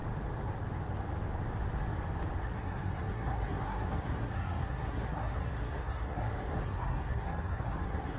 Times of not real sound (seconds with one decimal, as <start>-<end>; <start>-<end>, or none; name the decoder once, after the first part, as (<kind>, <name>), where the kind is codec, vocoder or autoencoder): 2.4-8.2 (codec, SNAC)